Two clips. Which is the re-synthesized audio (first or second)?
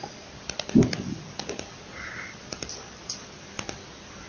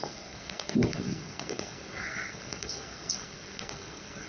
second